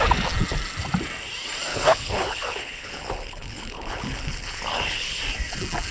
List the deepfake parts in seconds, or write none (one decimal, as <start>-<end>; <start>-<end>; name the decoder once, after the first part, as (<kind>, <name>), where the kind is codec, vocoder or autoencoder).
1.7-5.2 (codec, HILCodec)